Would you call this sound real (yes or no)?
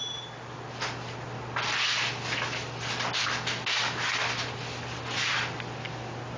yes